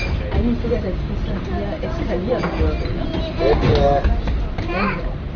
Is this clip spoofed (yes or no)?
no